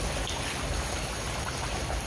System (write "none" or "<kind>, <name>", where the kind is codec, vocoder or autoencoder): none